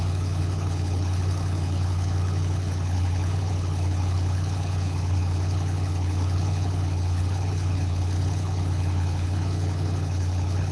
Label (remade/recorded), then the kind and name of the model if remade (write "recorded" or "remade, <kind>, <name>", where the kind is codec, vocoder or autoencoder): remade, codec, HILCodec